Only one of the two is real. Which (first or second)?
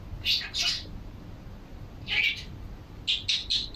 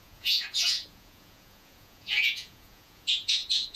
first